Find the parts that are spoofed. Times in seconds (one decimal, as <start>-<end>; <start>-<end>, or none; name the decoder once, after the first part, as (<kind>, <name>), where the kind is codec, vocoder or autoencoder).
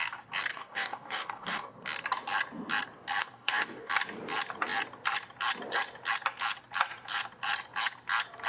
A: 0.5-1.7 (codec, DAC); 3.2-3.9